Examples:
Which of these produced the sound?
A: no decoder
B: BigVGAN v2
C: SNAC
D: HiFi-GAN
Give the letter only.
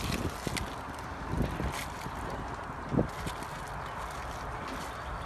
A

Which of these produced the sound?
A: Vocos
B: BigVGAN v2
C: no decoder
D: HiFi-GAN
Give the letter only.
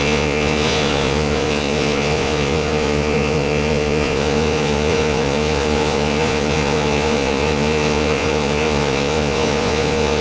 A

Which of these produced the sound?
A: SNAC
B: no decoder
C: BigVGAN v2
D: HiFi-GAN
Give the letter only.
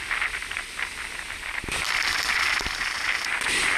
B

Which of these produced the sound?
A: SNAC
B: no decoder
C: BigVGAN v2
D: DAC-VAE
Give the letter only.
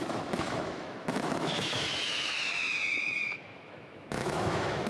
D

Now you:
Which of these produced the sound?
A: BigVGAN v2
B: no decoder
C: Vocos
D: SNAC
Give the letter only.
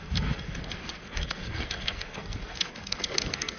D